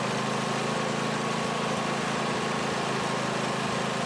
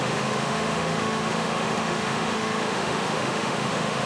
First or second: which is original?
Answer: first